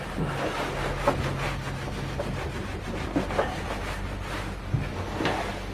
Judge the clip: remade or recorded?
recorded